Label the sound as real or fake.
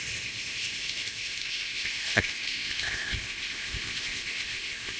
fake